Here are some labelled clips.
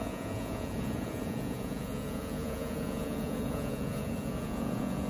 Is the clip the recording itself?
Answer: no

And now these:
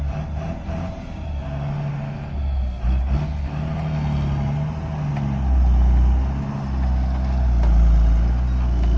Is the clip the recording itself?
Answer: yes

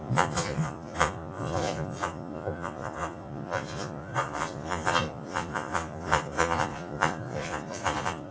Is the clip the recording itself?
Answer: no